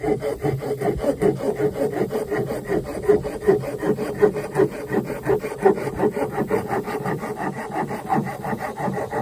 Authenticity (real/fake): real